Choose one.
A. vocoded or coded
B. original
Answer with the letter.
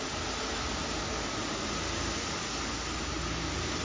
B